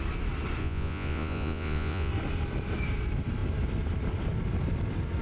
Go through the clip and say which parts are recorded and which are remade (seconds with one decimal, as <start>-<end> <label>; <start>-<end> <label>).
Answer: 0.0-0.6 recorded; 0.6-2.1 remade; 2.1-5.2 recorded